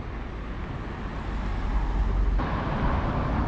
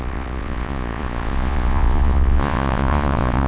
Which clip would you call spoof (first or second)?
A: second